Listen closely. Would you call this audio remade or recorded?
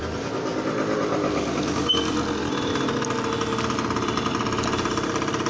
recorded